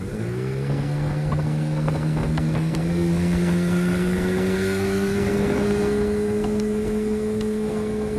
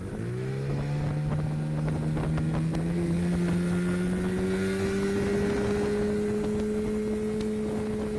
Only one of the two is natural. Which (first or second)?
second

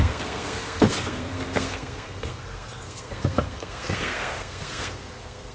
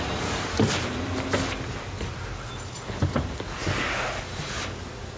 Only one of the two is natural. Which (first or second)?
second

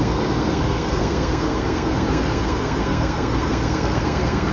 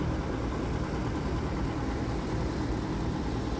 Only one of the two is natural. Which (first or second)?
second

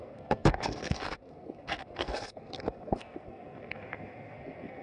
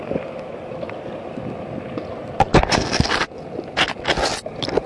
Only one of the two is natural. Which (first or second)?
second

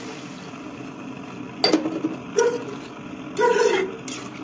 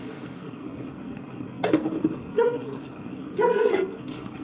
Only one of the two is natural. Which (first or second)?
first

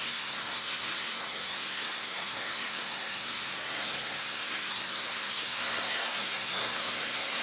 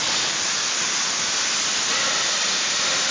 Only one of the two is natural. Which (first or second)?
second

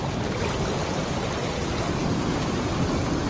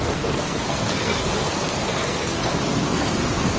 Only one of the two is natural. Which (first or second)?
first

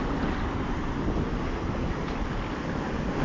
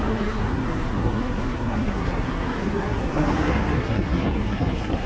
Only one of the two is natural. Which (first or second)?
first